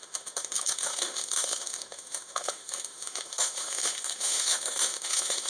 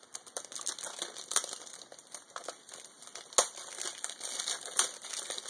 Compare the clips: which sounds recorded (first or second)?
second